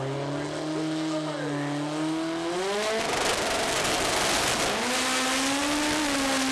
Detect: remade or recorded recorded